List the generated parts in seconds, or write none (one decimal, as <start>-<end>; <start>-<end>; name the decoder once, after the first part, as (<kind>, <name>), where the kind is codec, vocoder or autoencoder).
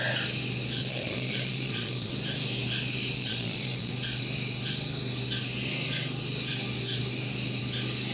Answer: 0.8-2.1 (vocoder, Vocos); 3.2-3.9